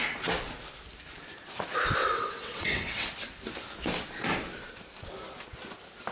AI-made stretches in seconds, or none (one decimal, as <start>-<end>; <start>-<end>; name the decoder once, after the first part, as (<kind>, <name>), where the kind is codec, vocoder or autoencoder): 2.0-3.1 (vocoder, WaveNeXt)